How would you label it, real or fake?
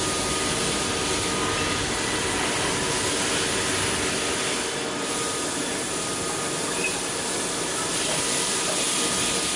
real